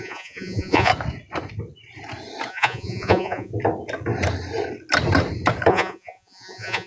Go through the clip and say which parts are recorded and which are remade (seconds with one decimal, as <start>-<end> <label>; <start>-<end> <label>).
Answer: 0.0-0.9 remade; 0.9-2.5 recorded; 2.5-3.5 remade; 3.5-5.7 recorded; 5.7-6.9 remade